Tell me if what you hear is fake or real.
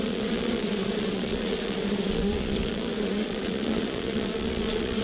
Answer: fake